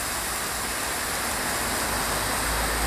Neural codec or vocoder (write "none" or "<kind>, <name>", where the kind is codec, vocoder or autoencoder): none